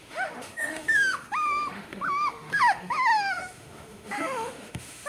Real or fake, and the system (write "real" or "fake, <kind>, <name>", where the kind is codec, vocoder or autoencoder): fake, autoencoder, DAC-VAE